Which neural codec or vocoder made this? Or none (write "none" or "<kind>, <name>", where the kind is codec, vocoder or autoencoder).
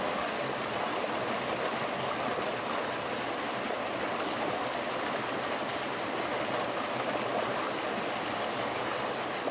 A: none